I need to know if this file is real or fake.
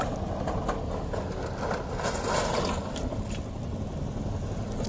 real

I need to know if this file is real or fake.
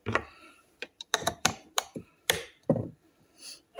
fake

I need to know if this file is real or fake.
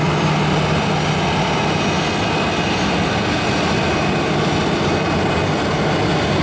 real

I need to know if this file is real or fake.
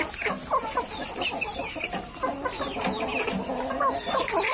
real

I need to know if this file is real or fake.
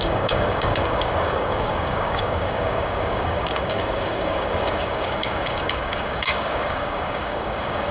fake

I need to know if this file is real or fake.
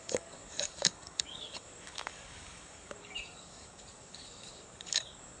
fake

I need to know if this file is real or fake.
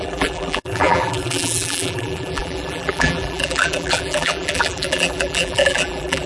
fake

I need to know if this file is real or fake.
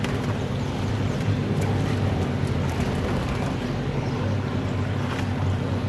real